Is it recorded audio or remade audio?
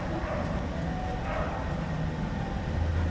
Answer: recorded